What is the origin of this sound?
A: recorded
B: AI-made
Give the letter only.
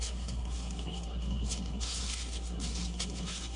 B